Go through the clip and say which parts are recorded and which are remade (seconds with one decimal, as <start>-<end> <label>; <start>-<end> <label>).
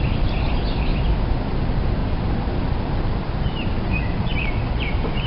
0.0-0.9 remade; 0.9-1.5 recorded; 1.5-2.0 remade; 2.0-2.6 recorded; 2.6-5.3 remade